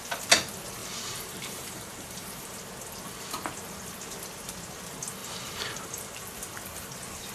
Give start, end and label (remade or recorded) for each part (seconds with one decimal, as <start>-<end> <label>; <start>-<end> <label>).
0.0-0.8 recorded; 0.8-2.6 remade; 2.6-5.2 recorded; 5.2-6.2 remade; 6.2-7.3 recorded